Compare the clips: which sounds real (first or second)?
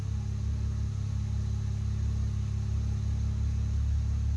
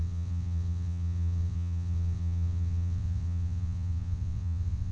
first